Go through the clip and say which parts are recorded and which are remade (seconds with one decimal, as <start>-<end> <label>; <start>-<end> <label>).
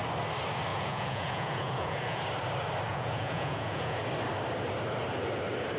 0.0-0.7 recorded; 0.7-2.2 remade; 2.2-2.9 recorded; 2.9-4.0 remade; 4.0-5.8 recorded